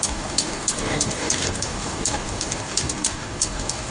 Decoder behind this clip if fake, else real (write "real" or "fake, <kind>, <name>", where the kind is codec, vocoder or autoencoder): fake, codec, DAC